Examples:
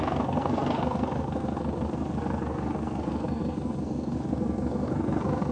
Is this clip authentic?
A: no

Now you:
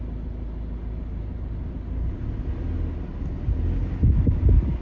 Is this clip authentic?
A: yes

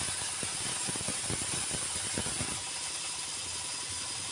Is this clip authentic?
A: yes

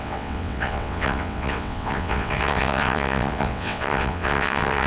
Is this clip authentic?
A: no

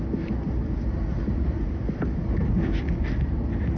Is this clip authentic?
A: yes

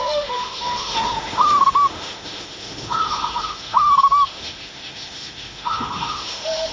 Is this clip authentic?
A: no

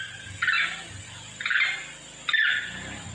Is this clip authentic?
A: yes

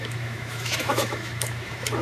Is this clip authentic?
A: no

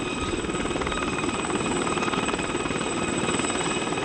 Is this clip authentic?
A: yes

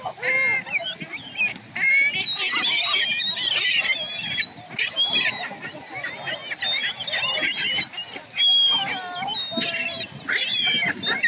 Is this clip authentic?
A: yes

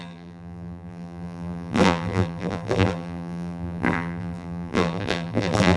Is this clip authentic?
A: no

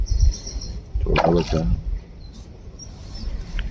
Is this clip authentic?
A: yes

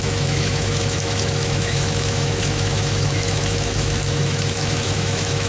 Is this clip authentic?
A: no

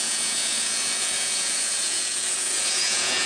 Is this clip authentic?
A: no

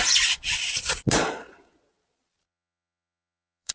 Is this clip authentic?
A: no